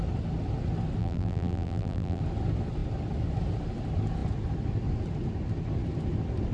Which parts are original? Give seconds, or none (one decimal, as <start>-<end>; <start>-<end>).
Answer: 0.0-1.0; 2.2-6.5

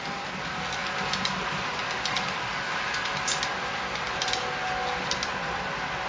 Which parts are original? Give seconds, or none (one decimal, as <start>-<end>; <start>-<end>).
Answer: 0.0-6.1

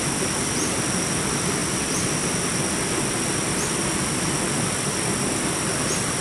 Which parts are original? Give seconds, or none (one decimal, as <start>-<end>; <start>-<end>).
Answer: 0.0-6.2

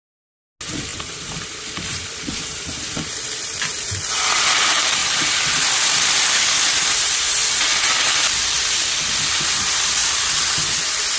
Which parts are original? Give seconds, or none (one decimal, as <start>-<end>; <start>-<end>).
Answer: 0.0-0.9; 4.2-5.0; 7.3-10.0; 10.7-11.2

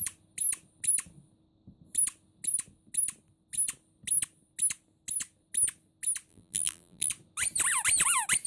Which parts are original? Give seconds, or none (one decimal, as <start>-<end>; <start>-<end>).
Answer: 0.0-6.3; 7.1-8.5

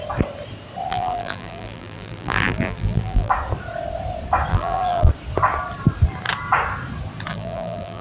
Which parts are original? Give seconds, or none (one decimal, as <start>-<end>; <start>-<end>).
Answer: 0.0-0.9; 3.3-4.5; 5.1-7.3